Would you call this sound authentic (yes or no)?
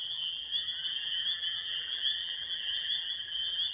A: no